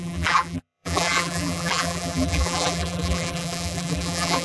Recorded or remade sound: remade